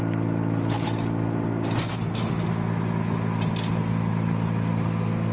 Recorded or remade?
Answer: recorded